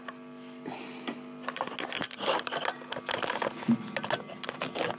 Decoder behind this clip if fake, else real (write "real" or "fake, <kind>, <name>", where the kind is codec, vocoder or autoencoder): real